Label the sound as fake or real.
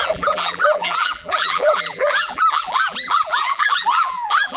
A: fake